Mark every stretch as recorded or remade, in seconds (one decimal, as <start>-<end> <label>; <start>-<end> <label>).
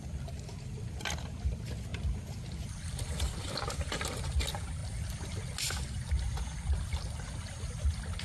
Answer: 0.0-8.2 recorded